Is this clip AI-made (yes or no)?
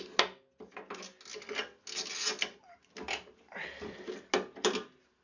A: no